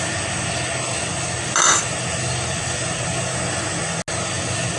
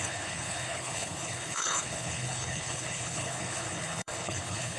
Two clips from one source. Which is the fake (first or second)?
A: second